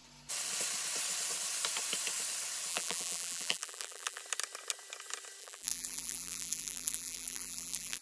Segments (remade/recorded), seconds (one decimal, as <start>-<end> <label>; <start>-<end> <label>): 0.0-2.7 recorded; 2.7-4.2 remade; 4.2-5.4 recorded; 5.4-8.0 remade